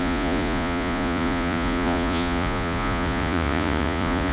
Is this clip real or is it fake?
fake